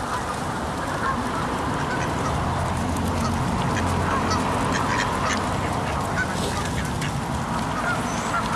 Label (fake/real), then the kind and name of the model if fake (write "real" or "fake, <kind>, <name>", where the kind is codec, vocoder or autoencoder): real